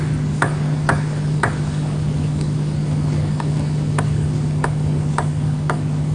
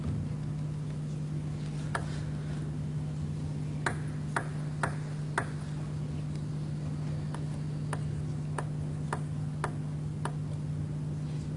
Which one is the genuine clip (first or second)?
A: second